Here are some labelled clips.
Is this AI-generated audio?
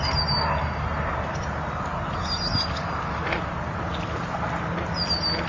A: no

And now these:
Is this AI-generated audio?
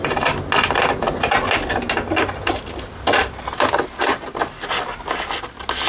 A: no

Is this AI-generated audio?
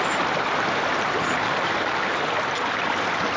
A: no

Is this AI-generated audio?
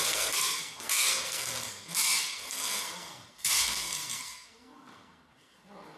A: yes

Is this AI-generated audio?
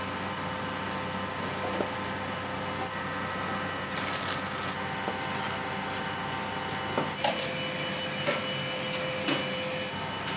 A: no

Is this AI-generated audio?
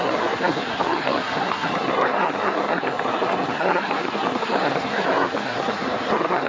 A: yes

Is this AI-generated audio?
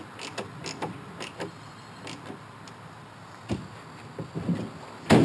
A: no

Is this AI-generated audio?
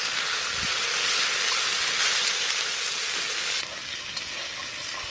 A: no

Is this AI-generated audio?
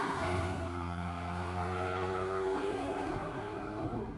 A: yes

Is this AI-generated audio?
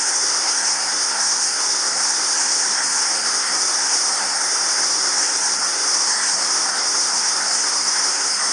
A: yes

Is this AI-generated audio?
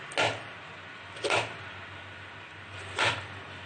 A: no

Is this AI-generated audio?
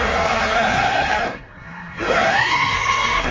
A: yes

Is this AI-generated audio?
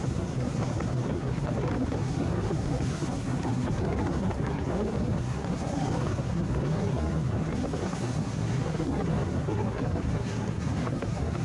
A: yes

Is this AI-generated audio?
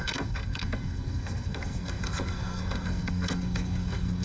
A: yes